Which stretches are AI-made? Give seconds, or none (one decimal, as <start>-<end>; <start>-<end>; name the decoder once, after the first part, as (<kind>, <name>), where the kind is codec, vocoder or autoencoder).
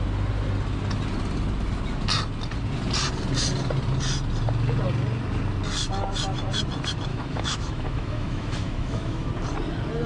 7.1-9.3 (autoencoder, DAC-VAE)